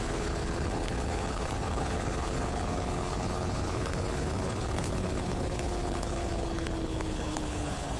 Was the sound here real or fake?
fake